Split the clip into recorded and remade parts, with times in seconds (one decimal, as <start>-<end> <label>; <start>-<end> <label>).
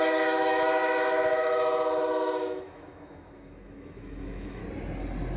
0.0-4.6 remade; 4.6-5.4 recorded